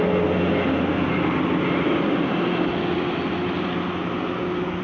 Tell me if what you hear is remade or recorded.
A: recorded